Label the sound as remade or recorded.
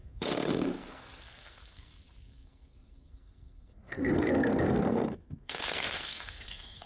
remade